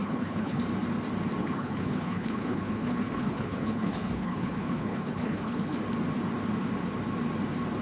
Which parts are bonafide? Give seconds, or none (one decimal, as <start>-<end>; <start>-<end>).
0.6-1.4; 5.8-7.8